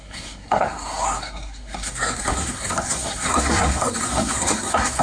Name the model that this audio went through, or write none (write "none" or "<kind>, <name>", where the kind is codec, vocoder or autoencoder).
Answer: codec, SNAC